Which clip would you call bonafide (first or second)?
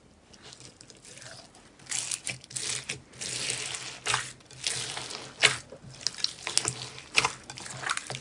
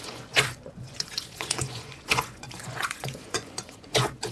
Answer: first